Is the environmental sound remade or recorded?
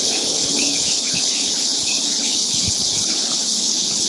remade